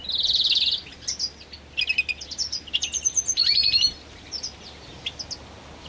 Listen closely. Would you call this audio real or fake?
real